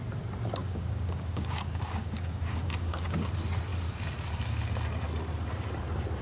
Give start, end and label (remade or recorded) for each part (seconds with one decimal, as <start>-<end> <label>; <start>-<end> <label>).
0.0-0.6 recorded; 0.6-3.3 remade; 3.3-6.2 recorded

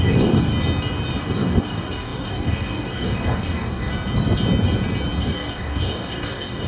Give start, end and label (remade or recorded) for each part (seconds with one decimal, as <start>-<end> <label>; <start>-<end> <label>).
0.0-0.5 remade; 0.5-1.2 recorded; 1.2-3.9 remade; 3.9-5.2 recorded; 5.2-6.7 remade

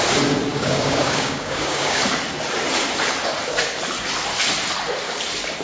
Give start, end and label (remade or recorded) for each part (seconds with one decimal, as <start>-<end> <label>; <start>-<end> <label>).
0.0-0.5 recorded; 0.5-2.0 remade; 2.0-5.6 recorded

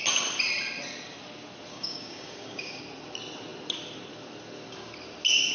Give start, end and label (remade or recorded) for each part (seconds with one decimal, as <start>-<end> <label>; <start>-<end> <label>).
0.0-1.7 recorded; 1.7-2.8 remade; 2.8-5.5 recorded

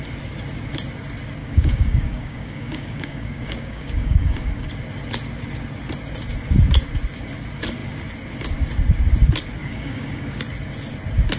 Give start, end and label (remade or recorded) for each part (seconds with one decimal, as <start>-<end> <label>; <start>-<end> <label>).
0.0-1.4 recorded; 1.4-4.7 remade; 4.7-9.6 recorded; 9.6-10.4 remade; 10.4-11.4 recorded

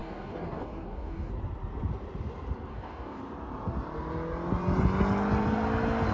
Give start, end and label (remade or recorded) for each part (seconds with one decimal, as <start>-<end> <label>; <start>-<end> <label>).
0.0-1.3 remade; 1.3-2.7 recorded; 2.7-3.2 remade; 3.2-6.1 recorded

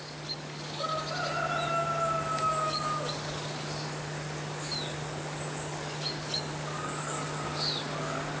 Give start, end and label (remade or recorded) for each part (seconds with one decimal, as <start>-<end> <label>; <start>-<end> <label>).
0.0-0.9 remade; 0.9-2.4 recorded; 2.4-8.4 remade